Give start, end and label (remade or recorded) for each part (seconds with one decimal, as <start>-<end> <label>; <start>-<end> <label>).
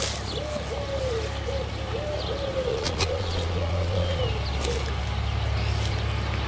0.0-2.7 recorded; 2.7-4.2 remade; 4.2-6.5 recorded